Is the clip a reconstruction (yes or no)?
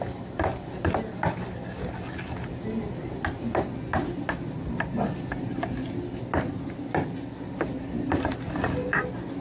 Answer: no